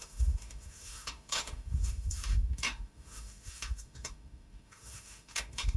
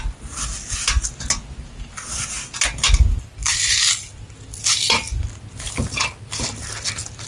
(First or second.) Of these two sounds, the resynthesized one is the first